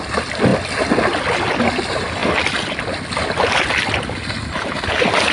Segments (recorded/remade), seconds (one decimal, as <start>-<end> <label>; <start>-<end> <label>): 0.0-5.3 recorded